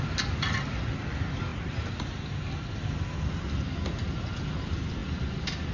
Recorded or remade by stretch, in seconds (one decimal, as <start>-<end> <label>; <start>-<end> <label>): 0.0-5.7 recorded